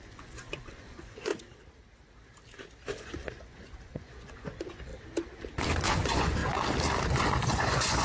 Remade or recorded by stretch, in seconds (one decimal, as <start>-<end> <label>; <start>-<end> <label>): 0.0-1.3 remade; 1.3-2.9 recorded; 2.9-4.9 remade; 4.9-5.9 recorded; 5.9-6.4 remade; 6.4-7.1 recorded; 7.1-8.0 remade